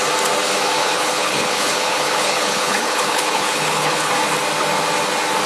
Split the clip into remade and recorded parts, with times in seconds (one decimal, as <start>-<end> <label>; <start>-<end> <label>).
0.0-0.8 recorded; 0.8-4.1 remade; 4.1-5.5 recorded